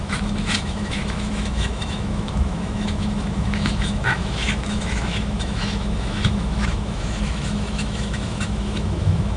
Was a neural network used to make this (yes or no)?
yes